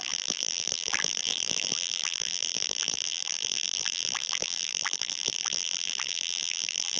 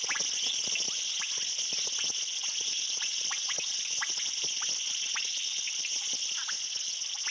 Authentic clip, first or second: second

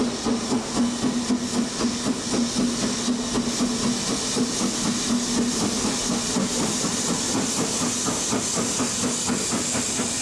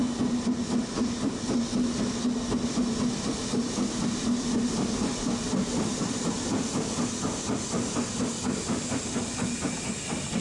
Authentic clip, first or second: first